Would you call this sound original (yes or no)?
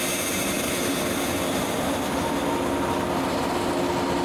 yes